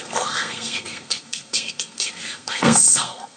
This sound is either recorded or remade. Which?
remade